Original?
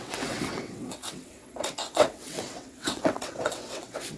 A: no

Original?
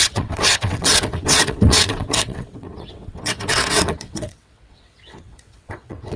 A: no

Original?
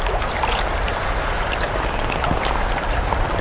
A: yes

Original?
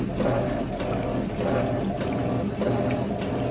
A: yes